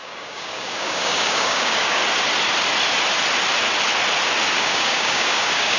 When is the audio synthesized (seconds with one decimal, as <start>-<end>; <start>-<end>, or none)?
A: 0.0-2.0; 4.5-5.8